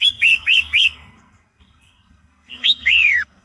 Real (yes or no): no